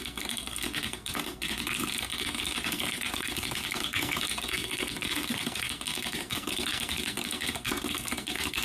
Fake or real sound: fake